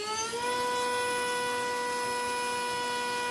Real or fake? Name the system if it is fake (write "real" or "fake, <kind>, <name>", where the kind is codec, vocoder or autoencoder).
real